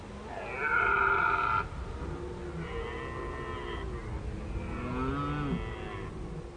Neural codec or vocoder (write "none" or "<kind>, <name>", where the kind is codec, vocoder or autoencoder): none